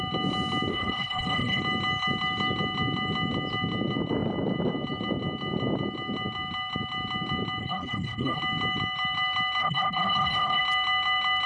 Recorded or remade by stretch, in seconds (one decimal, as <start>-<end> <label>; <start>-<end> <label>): 0.0-0.7 recorded; 0.7-1.6 remade; 1.6-7.6 recorded; 7.6-8.4 remade; 8.4-9.6 recorded; 9.6-10.6 remade; 10.6-11.5 recorded